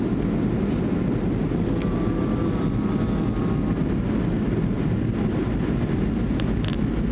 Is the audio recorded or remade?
recorded